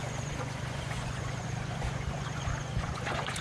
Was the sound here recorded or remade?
remade